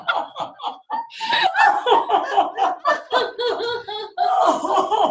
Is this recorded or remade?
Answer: recorded